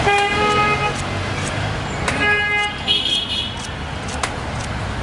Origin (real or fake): real